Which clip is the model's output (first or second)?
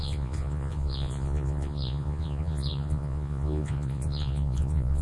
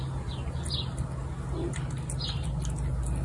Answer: first